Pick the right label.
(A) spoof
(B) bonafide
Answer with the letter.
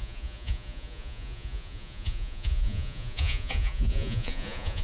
A